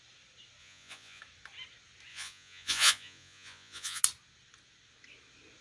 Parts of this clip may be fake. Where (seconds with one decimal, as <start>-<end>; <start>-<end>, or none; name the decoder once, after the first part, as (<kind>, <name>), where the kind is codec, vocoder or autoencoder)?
0.6-1.2 (vocoder, Vocos); 2.1-4.0